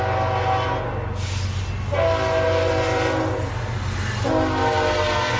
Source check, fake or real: real